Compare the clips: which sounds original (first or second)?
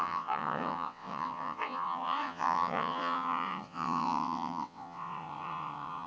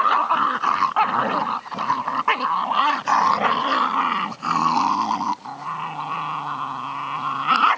second